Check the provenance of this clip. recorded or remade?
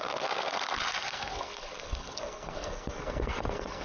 remade